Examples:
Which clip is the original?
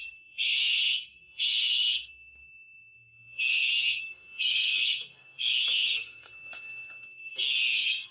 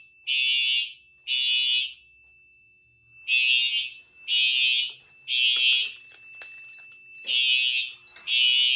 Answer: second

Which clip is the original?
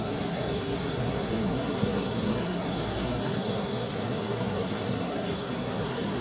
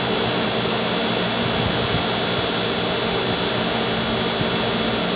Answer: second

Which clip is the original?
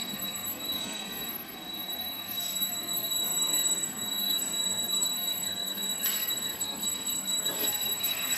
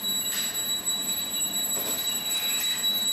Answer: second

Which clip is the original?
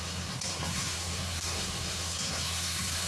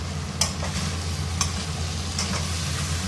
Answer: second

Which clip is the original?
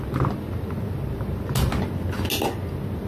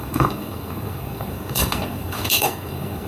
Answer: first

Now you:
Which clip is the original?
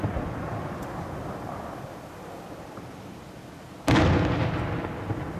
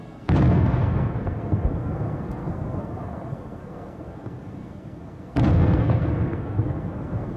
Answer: first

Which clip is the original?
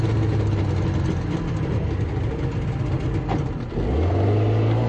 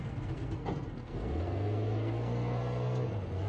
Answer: first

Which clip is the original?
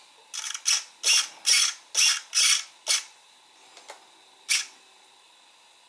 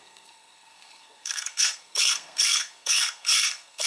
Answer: first